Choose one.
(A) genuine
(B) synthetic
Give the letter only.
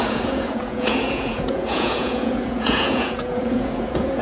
B